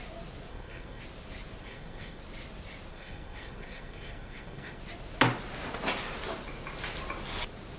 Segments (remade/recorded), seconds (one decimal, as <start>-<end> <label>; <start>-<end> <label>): 0.0-0.5 recorded; 0.5-1.0 remade; 1.0-1.6 recorded; 1.6-2.2 remade; 2.2-2.9 recorded; 2.9-4.8 remade; 4.8-7.8 recorded